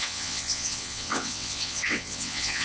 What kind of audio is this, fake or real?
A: fake